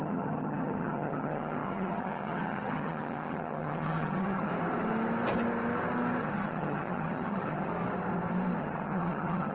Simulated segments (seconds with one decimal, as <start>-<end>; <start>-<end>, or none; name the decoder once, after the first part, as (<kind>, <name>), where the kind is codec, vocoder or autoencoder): 0.0-4.5 (vocoder, HiFi-GAN); 6.2-7.7; 8.6-9.5